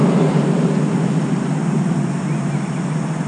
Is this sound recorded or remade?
recorded